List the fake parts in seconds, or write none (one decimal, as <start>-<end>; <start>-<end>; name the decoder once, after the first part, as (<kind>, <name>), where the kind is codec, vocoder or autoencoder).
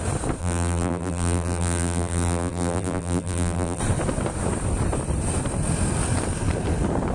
0.4-3.8 (vocoder, BigVGAN v2)